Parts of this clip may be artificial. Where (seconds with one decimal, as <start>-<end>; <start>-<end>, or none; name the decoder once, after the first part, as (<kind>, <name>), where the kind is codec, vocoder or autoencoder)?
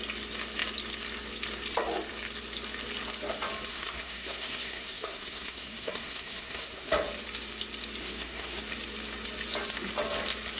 3.7-6.9 (codec, SNAC); 8.0-8.6